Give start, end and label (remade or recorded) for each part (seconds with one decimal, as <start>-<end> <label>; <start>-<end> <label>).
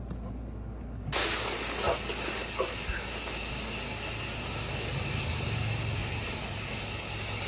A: 0.0-7.5 recorded